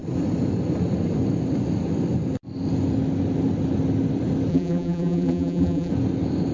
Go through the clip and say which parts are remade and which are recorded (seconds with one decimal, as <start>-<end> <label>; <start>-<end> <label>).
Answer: 0.0-4.5 recorded; 4.5-5.9 remade; 5.9-6.5 recorded